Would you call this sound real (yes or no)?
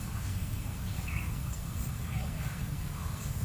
no